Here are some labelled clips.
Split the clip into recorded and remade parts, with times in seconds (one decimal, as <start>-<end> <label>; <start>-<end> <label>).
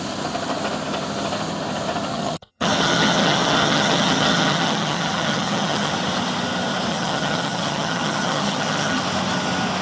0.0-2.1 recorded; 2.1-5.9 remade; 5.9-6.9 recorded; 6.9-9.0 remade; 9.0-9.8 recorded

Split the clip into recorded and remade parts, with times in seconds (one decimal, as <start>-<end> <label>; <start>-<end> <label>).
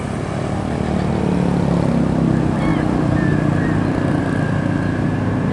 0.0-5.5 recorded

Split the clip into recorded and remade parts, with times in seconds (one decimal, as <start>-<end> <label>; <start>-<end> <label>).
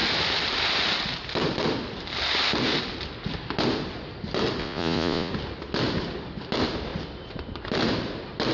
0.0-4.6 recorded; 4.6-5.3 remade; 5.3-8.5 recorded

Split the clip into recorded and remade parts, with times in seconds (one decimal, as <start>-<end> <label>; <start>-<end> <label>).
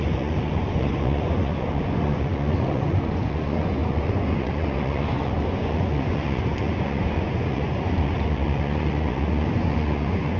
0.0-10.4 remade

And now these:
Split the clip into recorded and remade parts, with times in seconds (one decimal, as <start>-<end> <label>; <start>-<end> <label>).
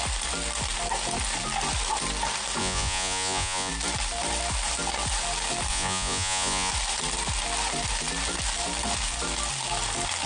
0.0-2.6 recorded; 2.6-3.7 remade; 3.7-5.7 recorded; 5.7-6.7 remade; 6.7-10.3 recorded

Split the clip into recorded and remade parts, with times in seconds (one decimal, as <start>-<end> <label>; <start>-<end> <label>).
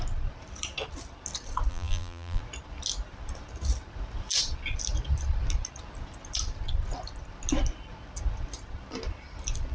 0.0-1.7 recorded; 1.7-2.4 remade; 2.4-9.7 recorded